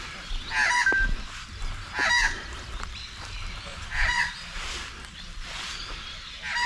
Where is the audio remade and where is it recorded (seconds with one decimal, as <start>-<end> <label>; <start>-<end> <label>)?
0.0-3.7 recorded; 3.7-4.3 remade; 4.3-6.7 recorded